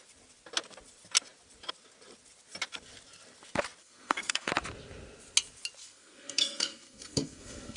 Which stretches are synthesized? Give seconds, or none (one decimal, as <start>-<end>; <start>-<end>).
3.8-4.5; 5.8-7.8